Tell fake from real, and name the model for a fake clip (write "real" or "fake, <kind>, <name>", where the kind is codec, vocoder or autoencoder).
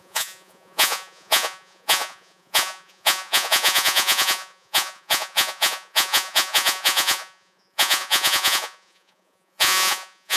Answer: fake, vocoder, Vocos